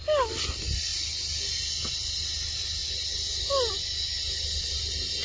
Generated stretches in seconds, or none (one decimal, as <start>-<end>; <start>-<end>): none

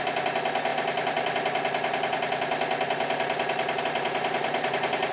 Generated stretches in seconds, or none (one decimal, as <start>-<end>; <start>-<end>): none

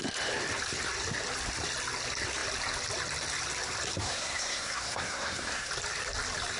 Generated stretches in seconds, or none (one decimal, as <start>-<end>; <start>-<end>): 4.0-5.7

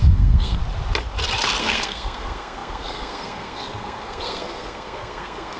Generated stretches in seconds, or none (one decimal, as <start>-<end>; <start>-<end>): 0.0-0.6; 1.6-5.6

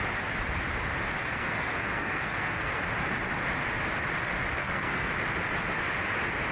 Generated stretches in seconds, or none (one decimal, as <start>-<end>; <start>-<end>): 1.2-2.8; 4.6-5.1

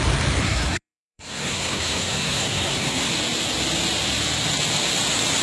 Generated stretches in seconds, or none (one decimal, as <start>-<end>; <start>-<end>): 0.4-3.1